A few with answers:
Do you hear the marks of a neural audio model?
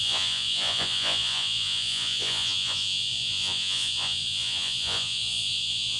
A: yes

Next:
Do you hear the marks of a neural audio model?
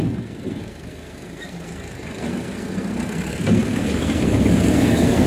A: yes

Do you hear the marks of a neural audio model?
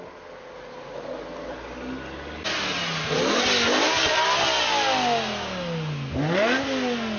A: no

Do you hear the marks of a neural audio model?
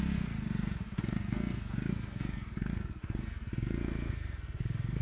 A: yes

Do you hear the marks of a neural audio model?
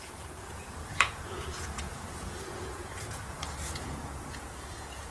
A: yes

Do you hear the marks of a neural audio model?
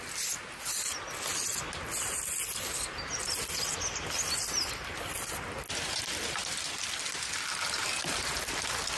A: no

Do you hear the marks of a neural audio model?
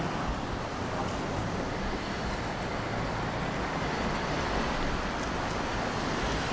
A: no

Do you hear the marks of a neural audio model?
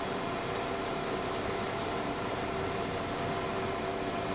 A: yes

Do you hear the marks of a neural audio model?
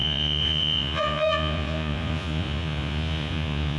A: yes